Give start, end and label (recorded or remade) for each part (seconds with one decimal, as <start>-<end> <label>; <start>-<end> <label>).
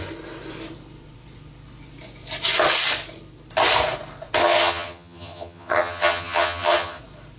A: 0.0-4.4 recorded; 4.4-7.0 remade; 7.0-7.4 recorded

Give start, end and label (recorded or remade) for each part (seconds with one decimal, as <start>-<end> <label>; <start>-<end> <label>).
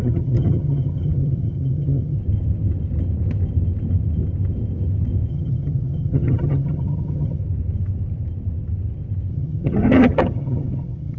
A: 0.0-2.2 remade; 2.2-5.3 recorded; 5.3-7.4 remade; 7.4-9.3 recorded; 9.3-11.2 remade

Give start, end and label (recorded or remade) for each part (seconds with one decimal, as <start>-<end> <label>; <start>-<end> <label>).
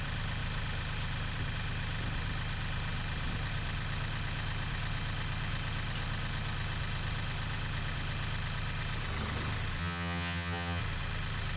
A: 0.0-9.8 recorded; 9.8-10.8 remade; 10.8-11.6 recorded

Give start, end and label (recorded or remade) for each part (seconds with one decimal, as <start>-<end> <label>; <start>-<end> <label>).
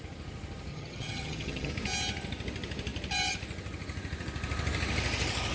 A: 0.0-0.7 recorded; 0.7-1.7 remade; 1.7-5.5 recorded